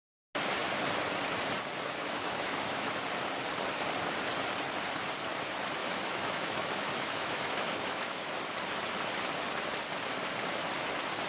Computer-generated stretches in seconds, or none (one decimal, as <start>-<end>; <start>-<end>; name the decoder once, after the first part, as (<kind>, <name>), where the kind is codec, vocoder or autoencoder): 2.0-3.0 (autoencoder, DAC-VAE); 5.8-8.3